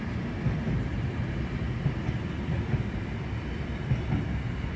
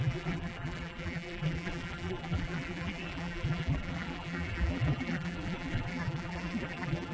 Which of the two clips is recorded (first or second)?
first